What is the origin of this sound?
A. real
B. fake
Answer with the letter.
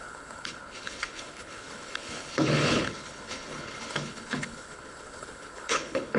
B